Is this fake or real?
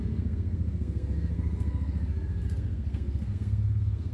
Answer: fake